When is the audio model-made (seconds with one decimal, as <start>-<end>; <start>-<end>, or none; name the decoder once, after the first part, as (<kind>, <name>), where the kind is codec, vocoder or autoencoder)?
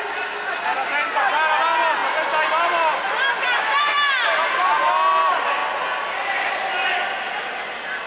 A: none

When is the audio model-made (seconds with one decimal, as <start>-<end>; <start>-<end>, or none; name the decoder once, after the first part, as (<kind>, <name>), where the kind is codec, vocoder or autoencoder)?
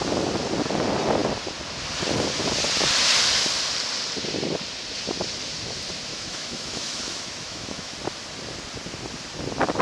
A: 6.1-8.0 (autoencoder, DAC-VAE)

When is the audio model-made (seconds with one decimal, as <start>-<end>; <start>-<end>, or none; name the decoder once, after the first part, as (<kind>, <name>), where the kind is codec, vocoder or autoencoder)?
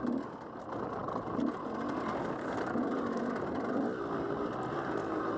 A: none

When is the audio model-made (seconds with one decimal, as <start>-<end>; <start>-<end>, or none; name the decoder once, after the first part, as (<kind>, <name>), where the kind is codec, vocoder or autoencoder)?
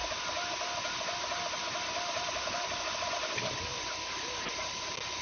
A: none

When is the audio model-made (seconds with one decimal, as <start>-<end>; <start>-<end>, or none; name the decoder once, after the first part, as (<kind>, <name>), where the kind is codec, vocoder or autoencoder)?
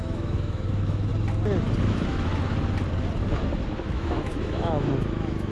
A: 0.0-1.1 (autoencoder, DAC-VAE); 1.8-2.3; 3.8-5.5